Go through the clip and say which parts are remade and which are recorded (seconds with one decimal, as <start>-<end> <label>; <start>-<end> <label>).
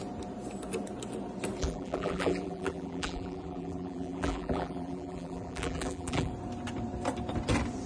0.0-1.6 recorded; 1.6-6.3 remade; 6.3-7.9 recorded